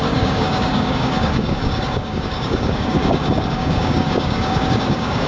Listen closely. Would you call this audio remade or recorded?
remade